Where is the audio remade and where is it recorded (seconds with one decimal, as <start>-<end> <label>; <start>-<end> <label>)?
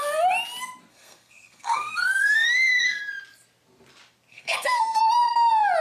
0.0-0.9 recorded; 0.9-3.0 remade; 3.0-4.3 recorded; 4.3-5.0 remade; 5.0-5.8 recorded